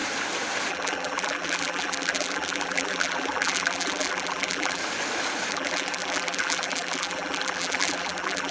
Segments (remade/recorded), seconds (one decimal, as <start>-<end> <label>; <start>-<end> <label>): 0.0-0.7 recorded; 0.7-4.8 remade; 4.8-5.5 recorded; 5.5-8.5 remade